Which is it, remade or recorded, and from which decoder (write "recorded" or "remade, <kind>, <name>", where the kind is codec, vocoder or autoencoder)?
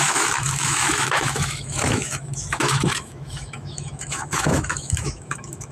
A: remade, autoencoder, DAC-VAE